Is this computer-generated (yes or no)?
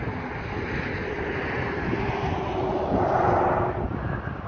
yes